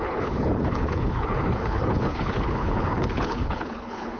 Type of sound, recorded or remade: remade